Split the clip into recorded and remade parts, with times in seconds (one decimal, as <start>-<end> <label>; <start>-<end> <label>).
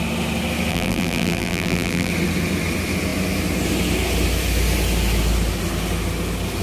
0.0-0.7 recorded; 0.7-2.1 remade; 2.1-6.6 recorded